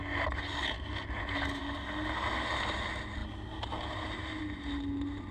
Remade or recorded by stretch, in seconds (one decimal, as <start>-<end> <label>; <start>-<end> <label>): 0.0-5.3 recorded